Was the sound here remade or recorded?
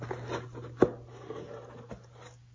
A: recorded